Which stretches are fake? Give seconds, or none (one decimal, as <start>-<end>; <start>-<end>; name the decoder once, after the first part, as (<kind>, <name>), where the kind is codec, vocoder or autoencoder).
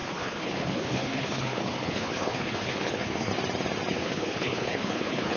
0.0-3.3 (codec, HILCodec); 3.9-5.4